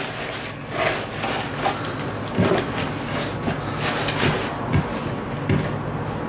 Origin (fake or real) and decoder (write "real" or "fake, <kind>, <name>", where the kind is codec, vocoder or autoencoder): real